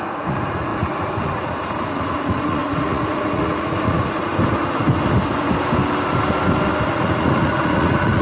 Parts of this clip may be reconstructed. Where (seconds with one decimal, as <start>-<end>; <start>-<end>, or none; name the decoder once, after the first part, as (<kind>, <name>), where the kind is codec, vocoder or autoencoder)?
0.0-4.3 (vocoder, Vocos); 6.9-8.2